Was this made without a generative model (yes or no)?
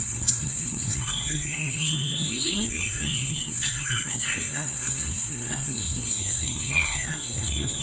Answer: no